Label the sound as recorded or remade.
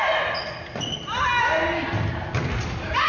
recorded